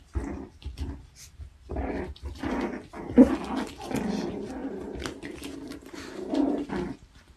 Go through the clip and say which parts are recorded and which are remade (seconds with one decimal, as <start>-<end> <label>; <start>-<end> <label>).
0.0-4.6 recorded; 4.6-6.7 remade; 6.7-7.4 recorded